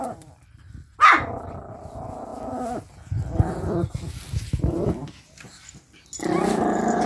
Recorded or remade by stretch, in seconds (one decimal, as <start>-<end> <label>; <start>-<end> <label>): 0.0-7.1 recorded